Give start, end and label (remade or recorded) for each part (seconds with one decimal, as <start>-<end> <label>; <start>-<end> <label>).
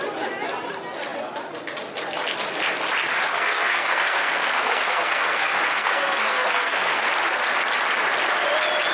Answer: 0.0-3.3 recorded; 3.3-7.1 remade; 7.1-8.9 recorded